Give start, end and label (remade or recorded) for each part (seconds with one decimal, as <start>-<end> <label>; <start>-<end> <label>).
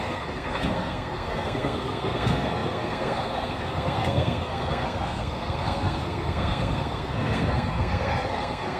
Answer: 0.0-8.8 remade